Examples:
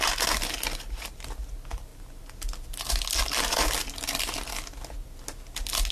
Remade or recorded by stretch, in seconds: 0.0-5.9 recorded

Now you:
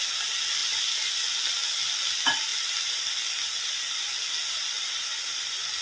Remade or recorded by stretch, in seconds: 0.0-5.8 recorded

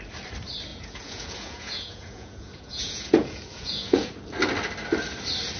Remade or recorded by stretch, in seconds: 0.0-0.7 recorded; 0.7-4.1 remade; 4.1-5.6 recorded

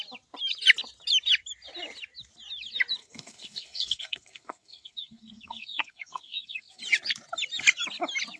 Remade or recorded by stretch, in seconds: 0.0-3.0 recorded; 3.0-6.8 remade; 6.8-8.4 recorded

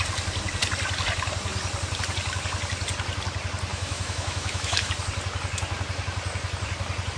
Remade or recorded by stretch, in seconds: 0.0-3.7 recorded; 3.7-4.9 remade; 4.9-7.2 recorded